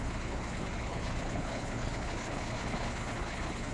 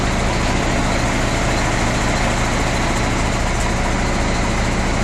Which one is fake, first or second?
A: first